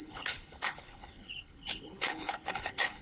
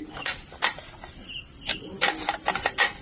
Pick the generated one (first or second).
first